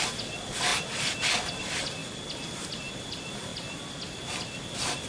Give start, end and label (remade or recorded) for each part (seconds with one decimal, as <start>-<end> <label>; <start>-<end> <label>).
0.0-5.1 recorded